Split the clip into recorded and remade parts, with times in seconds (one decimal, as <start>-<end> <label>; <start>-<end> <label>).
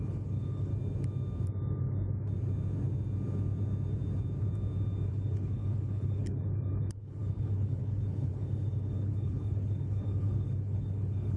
0.0-0.7 remade; 0.7-5.1 recorded; 5.1-11.4 remade